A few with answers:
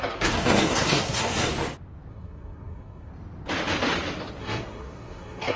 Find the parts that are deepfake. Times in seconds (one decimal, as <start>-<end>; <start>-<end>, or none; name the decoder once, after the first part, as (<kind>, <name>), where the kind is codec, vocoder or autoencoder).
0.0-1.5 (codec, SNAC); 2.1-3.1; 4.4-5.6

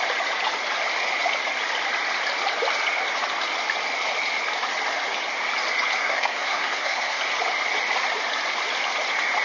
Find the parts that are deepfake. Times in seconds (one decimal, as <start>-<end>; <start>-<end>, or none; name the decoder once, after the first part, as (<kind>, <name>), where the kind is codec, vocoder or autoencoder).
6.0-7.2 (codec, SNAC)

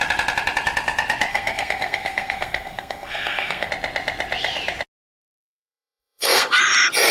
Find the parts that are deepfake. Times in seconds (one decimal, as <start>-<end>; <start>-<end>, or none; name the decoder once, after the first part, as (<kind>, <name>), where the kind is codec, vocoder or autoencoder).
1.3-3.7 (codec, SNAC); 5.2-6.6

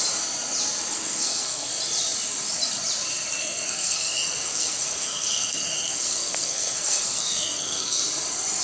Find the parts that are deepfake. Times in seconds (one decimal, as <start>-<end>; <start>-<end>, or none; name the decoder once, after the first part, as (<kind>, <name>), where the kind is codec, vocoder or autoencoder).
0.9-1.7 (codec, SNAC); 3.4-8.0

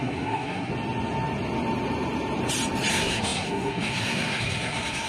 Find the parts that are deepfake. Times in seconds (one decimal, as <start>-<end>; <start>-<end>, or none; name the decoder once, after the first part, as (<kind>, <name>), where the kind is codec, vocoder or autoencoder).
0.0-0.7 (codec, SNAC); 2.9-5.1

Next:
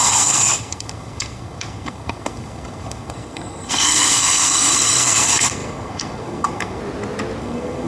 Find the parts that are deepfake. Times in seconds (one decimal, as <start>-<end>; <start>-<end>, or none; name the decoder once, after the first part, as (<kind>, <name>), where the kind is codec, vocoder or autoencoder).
0.0-6.8 (codec, SNAC); 7.4-7.9